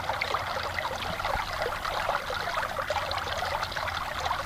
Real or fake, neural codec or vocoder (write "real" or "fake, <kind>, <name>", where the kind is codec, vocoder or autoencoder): real